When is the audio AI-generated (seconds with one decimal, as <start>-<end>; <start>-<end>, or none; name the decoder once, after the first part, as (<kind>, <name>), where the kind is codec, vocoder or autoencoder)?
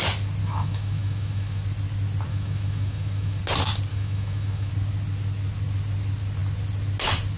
0.4-1.6 (autoencoder, DAC-VAE); 2.3-3.4; 3.9-4.7